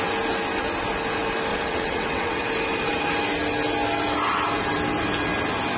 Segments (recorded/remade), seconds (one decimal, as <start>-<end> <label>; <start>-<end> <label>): 0.0-1.5 recorded; 1.5-2.5 remade; 2.5-5.8 recorded